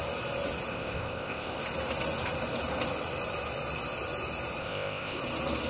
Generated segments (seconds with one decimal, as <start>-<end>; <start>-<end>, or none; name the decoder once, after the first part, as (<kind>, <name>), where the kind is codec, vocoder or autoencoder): 0.7-1.6 (codec, ZipCodec); 4.6-5.2